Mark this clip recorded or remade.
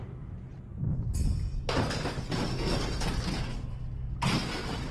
recorded